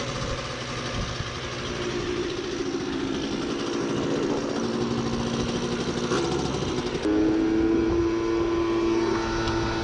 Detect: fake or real real